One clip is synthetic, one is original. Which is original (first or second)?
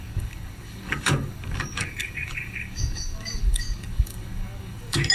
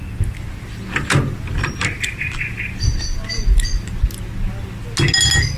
second